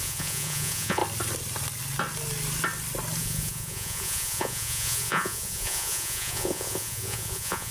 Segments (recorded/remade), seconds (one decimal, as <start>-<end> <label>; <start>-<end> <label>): 0.0-1.0 remade; 1.0-3.2 recorded; 3.2-7.7 remade